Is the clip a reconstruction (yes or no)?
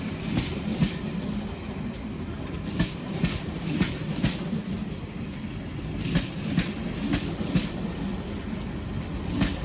no